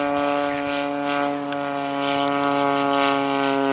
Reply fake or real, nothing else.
real